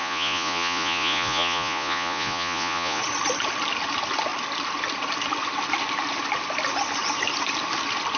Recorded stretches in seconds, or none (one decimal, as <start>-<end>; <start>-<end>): 3.0-8.2